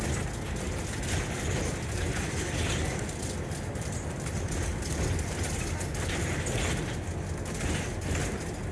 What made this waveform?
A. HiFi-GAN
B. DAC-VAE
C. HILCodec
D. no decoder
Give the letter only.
D